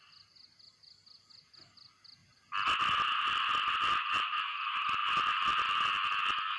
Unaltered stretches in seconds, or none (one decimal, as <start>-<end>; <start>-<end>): 0.0-6.6